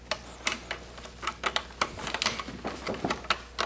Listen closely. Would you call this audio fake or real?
real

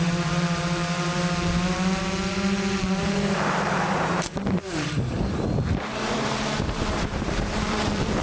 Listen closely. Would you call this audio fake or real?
fake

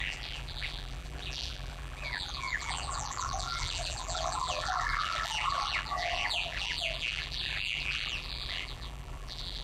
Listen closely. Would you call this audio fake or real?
fake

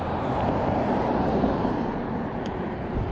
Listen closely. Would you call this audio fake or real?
fake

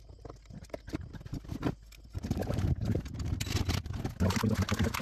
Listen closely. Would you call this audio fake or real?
real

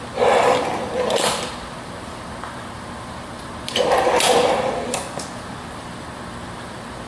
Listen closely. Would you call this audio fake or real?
real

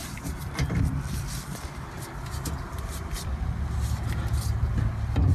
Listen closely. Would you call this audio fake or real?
real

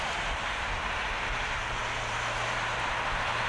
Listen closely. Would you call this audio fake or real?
real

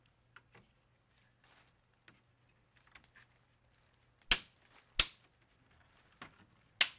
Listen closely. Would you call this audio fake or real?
real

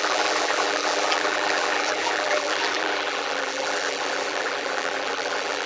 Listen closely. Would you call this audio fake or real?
fake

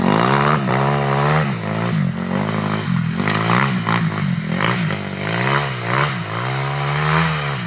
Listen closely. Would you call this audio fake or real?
real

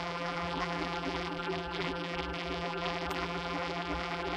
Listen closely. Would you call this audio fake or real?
fake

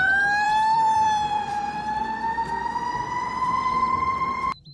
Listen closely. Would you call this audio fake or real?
fake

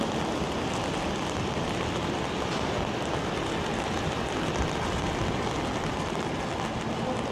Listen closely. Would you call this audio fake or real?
real